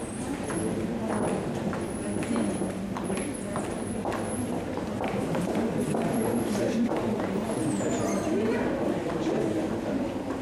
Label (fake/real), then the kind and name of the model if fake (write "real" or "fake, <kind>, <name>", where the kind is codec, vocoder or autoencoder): fake, vocoder, BigVGAN v2